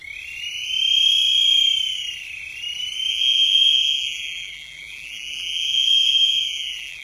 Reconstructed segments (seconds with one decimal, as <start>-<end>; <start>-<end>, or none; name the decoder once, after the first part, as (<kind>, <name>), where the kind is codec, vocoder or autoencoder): 3.1-7.0 (vocoder, BigVGAN v2)